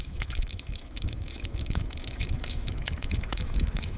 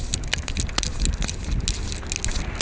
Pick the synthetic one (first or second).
first